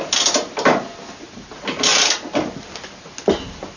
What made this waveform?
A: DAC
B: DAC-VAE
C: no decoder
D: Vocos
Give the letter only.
C